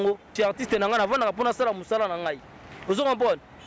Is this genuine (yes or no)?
yes